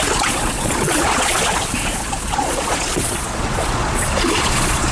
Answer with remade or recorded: remade